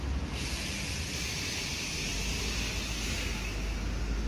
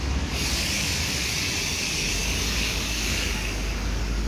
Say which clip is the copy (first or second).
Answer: second